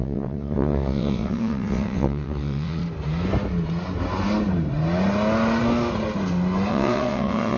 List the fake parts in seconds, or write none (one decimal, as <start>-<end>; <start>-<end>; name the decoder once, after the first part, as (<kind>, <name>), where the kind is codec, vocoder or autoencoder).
0.0-2.8 (vocoder, WaveNeXt); 6.7-7.6